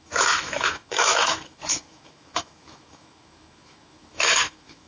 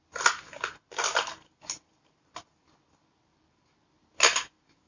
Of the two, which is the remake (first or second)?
first